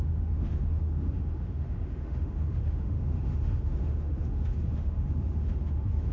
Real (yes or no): no